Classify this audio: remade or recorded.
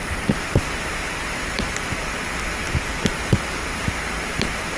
remade